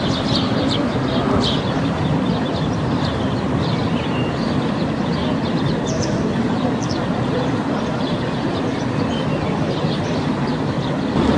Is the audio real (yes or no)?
no